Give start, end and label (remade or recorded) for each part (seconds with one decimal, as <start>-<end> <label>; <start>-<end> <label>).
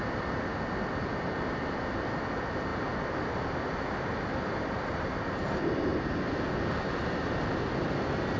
0.0-8.4 remade